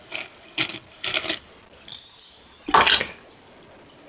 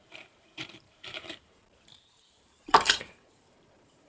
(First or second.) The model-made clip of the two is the second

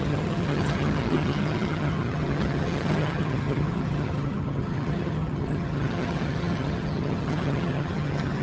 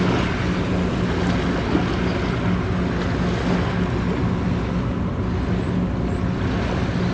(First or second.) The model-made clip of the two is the first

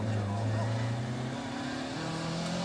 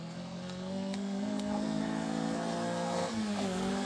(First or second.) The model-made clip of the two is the second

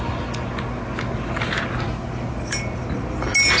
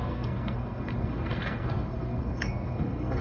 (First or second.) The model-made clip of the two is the second